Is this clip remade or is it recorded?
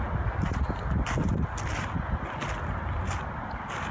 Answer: recorded